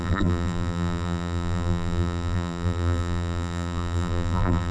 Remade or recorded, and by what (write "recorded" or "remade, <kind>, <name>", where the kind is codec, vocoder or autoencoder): remade, vocoder, BigVGAN v2